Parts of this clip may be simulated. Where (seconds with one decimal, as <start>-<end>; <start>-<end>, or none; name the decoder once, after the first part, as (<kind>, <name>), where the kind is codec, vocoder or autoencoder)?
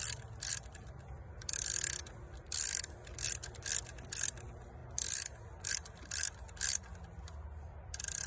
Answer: none